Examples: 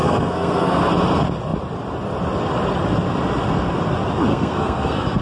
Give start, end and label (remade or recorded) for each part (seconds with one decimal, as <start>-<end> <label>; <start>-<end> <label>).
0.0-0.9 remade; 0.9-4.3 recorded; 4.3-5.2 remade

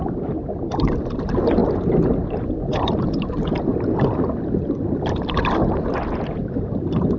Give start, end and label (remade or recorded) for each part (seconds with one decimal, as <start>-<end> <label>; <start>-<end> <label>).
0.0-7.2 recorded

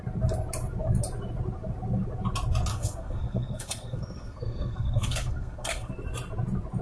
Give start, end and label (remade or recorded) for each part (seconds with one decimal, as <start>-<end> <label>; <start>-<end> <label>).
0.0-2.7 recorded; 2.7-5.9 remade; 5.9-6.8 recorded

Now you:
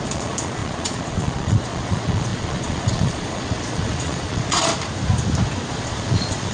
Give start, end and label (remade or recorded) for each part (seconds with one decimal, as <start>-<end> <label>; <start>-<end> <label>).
0.0-4.7 remade; 4.7-5.7 recorded; 5.7-6.5 remade

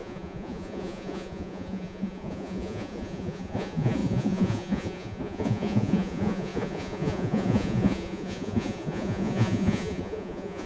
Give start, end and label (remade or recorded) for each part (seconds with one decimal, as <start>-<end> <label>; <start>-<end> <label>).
0.0-10.7 remade